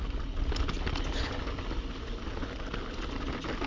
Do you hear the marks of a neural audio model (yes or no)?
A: no